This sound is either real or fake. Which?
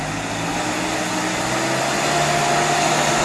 real